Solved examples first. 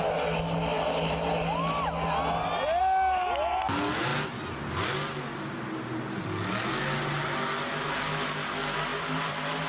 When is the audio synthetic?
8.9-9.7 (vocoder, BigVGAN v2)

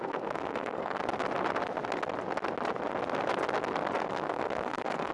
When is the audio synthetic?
0.0-1.0 (codec, SNAC); 4.1-5.1

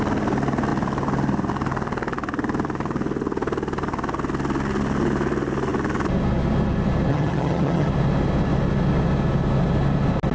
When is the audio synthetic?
7.1-7.9 (vocoder, HiFi-GAN)

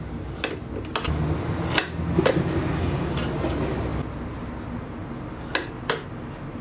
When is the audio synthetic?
none

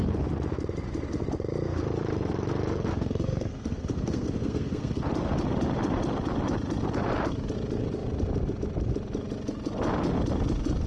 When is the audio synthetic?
2.9-5.0 (codec, SNAC)

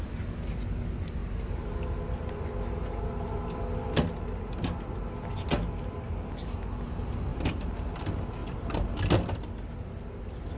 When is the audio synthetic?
7.3-7.9 (vocoder, BigVGAN v2); 8.4-8.9

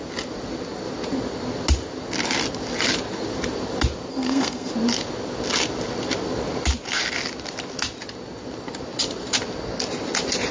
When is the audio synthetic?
4.1-4.7 (codec, SNAC)